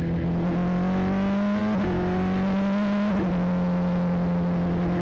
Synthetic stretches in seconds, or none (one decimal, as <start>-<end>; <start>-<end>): none